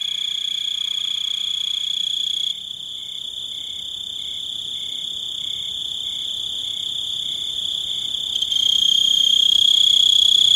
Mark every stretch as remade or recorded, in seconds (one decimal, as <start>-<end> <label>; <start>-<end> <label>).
0.0-8.8 recorded; 8.8-9.7 remade; 9.7-10.6 recorded